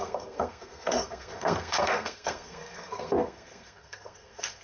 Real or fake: fake